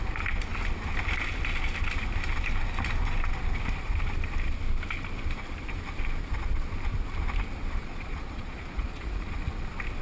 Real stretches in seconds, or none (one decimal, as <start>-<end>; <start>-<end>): 0.0-7.8; 9.3-10.0